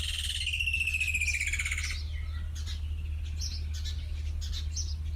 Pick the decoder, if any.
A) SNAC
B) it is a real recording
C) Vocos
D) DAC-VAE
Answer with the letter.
B